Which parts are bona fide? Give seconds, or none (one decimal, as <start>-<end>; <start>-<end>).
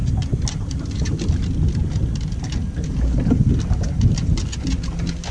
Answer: 0.0-5.3